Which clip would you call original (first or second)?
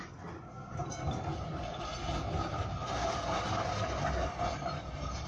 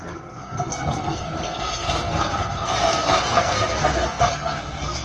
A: first